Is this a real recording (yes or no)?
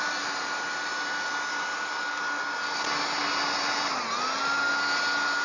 yes